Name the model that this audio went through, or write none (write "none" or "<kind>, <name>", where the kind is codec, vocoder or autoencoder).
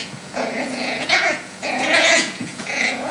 vocoder, Vocos